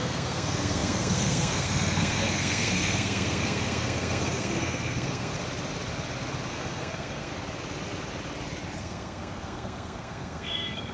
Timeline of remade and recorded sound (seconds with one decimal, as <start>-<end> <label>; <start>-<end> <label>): 0.0-5.3 remade; 5.3-6.5 recorded; 6.5-7.3 remade; 7.3-8.8 recorded; 8.8-10.9 remade